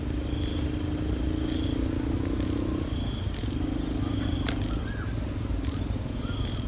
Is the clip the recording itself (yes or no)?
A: yes